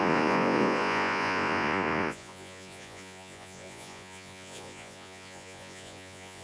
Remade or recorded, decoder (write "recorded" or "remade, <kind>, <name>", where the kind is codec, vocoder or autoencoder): remade, vocoder, Vocos